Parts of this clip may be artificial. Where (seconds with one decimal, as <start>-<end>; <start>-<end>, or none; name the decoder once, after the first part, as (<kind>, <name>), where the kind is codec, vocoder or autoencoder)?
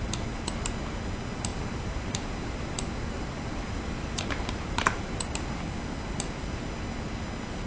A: 1.5-5.2 (vocoder, BigVGAN v2)